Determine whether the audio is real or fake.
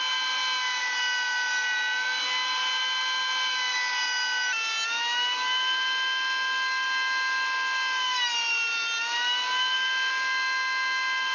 real